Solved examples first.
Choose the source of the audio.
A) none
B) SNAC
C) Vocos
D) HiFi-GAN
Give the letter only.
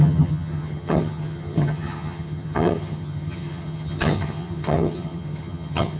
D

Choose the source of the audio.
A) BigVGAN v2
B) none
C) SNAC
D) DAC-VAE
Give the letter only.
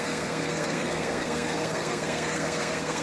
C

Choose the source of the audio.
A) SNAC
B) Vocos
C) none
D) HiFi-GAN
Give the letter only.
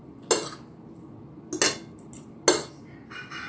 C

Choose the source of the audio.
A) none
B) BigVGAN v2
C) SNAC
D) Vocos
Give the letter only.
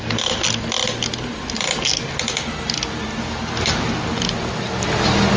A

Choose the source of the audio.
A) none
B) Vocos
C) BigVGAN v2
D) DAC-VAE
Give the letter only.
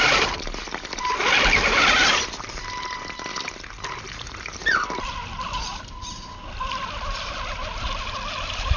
C